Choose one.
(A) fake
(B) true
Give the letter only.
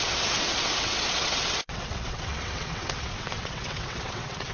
A